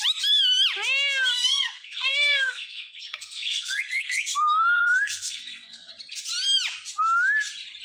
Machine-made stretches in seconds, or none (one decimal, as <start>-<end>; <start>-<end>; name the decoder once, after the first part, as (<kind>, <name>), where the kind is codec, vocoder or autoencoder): 1.3-5.9 (codec, SNAC)

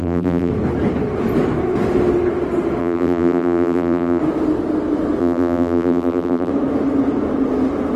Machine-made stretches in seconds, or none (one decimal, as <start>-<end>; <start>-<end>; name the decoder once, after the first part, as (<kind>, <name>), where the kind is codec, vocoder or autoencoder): 0.0-0.5 (vocoder, BigVGAN v2); 2.8-4.2; 5.2-6.5